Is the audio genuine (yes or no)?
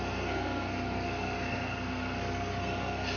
no